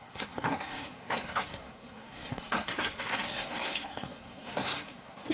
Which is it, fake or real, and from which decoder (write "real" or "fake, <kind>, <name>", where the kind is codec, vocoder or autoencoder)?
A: fake, codec, SNAC